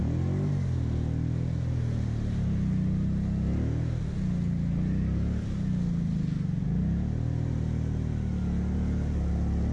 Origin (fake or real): real